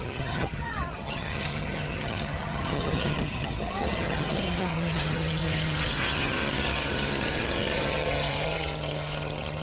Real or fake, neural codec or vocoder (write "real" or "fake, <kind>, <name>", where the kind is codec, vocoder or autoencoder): fake, vocoder, HiFi-GAN